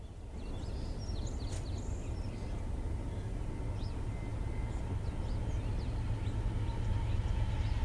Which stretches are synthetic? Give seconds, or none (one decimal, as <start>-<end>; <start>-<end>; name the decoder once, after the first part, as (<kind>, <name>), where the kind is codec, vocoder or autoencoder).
none